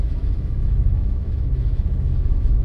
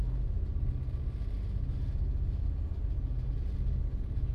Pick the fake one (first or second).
first